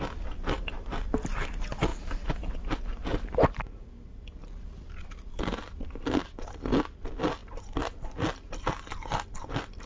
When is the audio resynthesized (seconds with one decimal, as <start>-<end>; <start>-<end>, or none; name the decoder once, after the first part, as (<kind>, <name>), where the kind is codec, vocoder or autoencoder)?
none